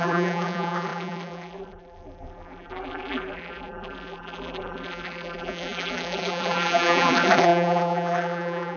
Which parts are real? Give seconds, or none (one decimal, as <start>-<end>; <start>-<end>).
none